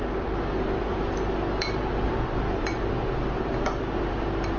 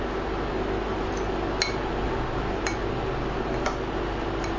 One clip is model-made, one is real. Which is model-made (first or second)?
first